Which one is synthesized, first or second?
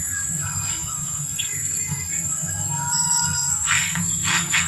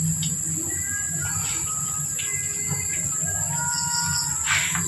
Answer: first